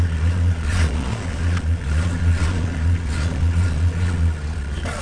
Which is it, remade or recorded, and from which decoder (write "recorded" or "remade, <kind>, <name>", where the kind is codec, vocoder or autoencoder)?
remade, vocoder, Vocos